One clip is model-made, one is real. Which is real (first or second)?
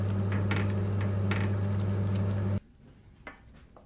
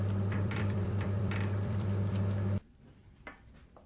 first